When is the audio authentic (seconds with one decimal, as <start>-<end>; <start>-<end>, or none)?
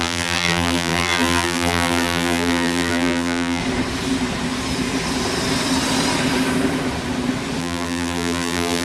3.6-7.6